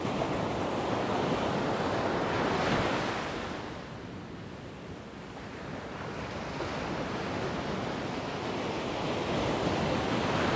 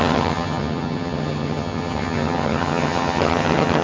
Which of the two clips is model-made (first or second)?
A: second